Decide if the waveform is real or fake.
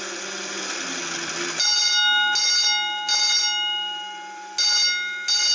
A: real